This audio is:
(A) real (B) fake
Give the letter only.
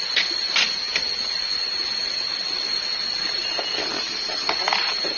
A